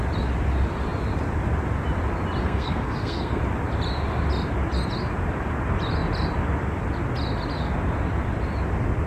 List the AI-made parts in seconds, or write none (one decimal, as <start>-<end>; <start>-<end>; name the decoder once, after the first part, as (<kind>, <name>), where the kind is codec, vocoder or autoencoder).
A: 2.4-3.4 (codec, SNAC)